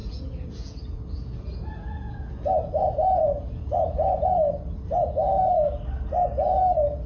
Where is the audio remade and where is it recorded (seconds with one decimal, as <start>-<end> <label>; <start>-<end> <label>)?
0.0-4.3 remade; 4.3-7.1 recorded